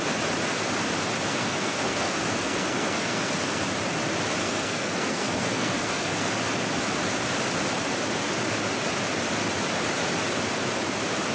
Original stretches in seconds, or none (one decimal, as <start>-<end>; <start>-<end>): 0.0-1.3; 3.6-4.4; 6.3-11.3

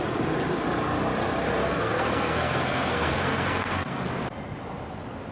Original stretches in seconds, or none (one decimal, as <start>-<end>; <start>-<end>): 0.0-1.6; 4.1-5.3

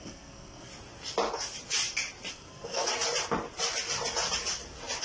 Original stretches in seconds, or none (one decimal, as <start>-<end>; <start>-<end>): 0.7-2.3; 2.9-5.0

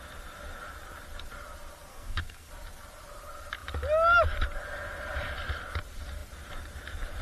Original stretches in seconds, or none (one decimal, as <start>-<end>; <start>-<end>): 0.0-1.9; 2.5-7.2